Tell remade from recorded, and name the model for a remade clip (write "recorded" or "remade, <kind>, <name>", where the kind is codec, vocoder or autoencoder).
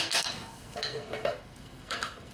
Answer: remade, codec, SNAC